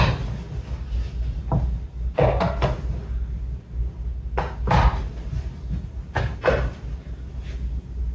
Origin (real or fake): real